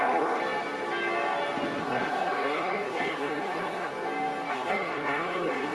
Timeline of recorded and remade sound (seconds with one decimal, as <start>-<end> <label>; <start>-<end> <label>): 0.0-0.4 remade; 0.4-1.8 recorded; 1.8-3.9 remade; 3.9-4.5 recorded; 4.5-5.7 remade